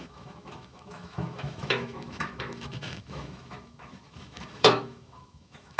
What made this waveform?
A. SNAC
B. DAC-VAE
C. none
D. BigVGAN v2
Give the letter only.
B